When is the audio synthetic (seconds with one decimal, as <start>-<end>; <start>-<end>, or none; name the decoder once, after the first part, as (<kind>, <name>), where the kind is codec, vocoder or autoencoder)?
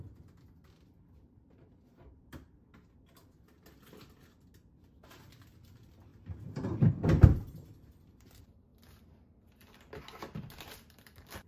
none